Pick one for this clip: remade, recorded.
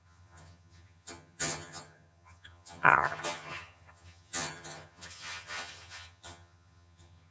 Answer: remade